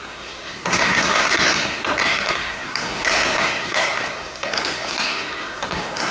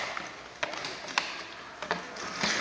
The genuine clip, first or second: second